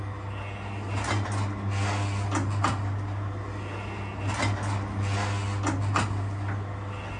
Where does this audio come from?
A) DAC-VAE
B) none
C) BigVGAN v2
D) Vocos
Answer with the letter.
B